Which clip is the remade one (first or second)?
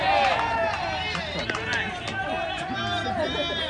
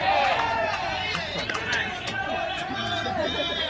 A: second